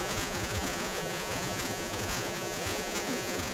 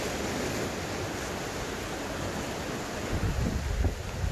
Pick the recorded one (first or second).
second